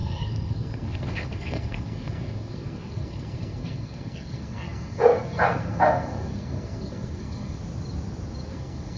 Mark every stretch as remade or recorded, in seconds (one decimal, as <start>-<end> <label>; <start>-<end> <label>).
0.0-7.6 remade; 7.6-8.5 recorded; 8.5-9.0 remade